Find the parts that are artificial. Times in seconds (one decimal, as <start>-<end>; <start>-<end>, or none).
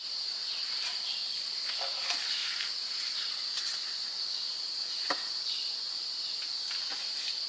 none